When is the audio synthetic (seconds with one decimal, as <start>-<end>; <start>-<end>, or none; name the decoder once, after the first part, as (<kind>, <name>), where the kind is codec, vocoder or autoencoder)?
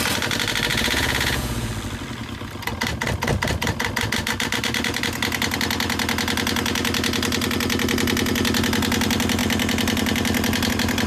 0.7-1.7 (vocoder, Vocos)